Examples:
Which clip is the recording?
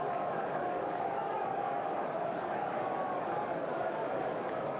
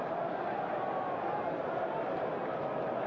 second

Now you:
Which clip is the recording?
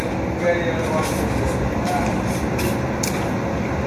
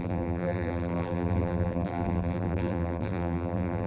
first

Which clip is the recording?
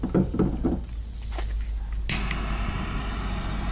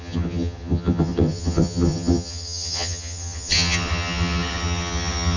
first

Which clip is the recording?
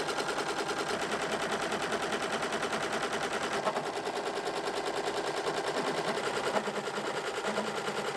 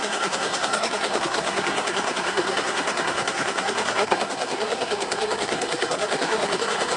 first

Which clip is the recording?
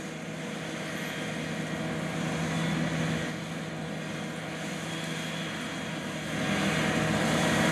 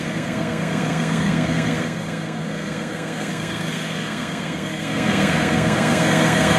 first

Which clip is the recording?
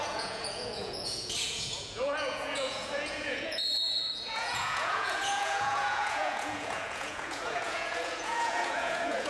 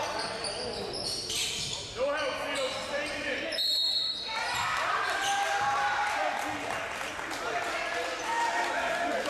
second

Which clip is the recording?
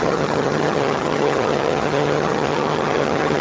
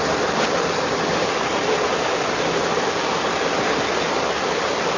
second